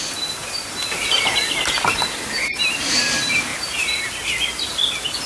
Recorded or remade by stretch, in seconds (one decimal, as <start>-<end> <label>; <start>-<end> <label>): 0.0-0.4 recorded; 0.4-2.9 remade; 2.9-3.5 recorded; 3.5-4.0 remade; 4.0-5.3 recorded